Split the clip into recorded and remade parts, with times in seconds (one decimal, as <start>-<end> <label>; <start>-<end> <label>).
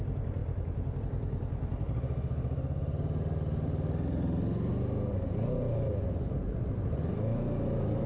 0.0-8.1 recorded